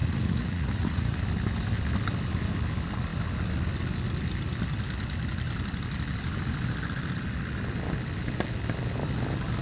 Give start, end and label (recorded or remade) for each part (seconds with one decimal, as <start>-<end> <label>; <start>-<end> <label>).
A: 0.0-1.2 remade; 1.2-9.6 recorded